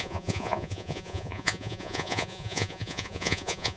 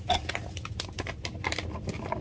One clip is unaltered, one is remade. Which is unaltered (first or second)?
second